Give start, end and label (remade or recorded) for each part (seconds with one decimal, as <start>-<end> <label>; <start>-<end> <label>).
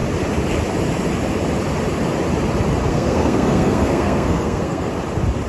0.0-2.9 recorded; 2.9-4.9 remade; 4.9-5.5 recorded